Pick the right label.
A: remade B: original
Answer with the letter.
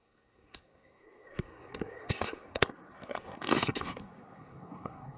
A